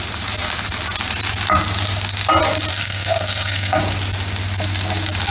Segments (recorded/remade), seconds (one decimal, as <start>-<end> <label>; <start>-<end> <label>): 0.0-2.7 recorded; 2.7-3.8 remade; 3.8-5.3 recorded